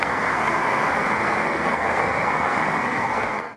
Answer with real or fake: fake